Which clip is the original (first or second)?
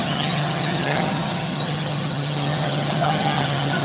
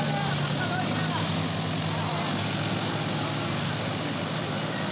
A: second